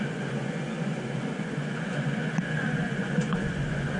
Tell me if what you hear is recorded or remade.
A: remade